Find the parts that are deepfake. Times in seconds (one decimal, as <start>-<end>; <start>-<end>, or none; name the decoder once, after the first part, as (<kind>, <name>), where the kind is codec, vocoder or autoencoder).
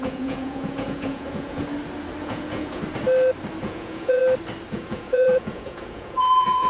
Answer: 0.0-1.6 (vocoder, Vocos); 2.2-2.8; 3.6-4.2; 4.7-6.7